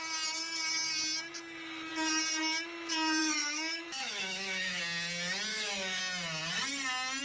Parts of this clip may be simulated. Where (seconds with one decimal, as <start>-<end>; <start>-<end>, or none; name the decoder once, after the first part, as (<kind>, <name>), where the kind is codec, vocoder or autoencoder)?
3.2-4.8 (autoencoder, DAC-VAE); 5.5-6.0